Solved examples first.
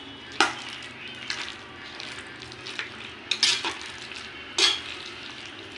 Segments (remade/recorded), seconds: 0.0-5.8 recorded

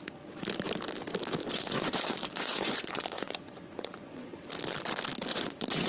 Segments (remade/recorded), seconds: 0.0-1.4 recorded; 1.4-4.4 remade; 4.4-5.3 recorded; 5.3-5.9 remade

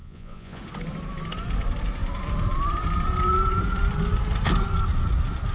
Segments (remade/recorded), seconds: 0.0-0.6 remade; 0.6-5.5 recorded